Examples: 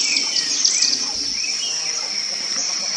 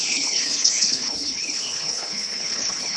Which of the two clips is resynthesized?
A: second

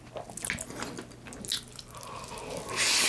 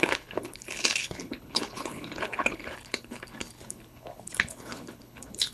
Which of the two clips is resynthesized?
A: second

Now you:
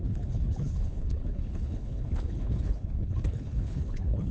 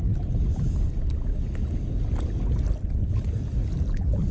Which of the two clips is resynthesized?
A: first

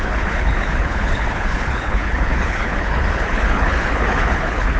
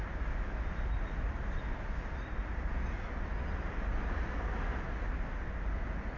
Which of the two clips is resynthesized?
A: first